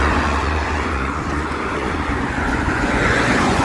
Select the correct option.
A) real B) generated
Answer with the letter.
B